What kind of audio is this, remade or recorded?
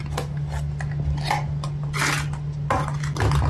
recorded